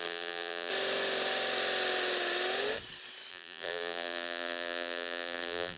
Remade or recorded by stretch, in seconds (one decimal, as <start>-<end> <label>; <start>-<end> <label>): 0.0-0.7 remade; 0.7-3.3 recorded; 3.3-5.8 remade